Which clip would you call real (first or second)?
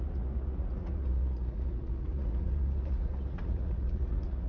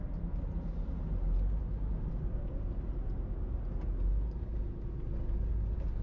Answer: second